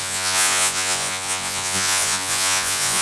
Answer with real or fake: fake